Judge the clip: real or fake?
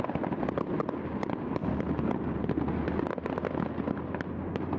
real